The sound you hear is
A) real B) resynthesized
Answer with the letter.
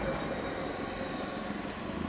A